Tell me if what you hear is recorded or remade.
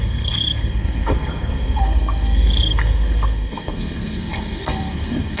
remade